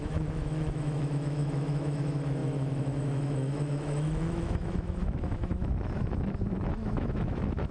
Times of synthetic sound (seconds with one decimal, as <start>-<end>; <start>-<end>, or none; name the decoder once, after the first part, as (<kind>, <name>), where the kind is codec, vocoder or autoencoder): 0.0-7.7 (autoencoder, DAC-VAE)